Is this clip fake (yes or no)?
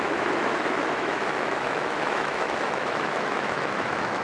yes